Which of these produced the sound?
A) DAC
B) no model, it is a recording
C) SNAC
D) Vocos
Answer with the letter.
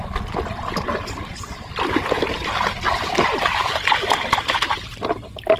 B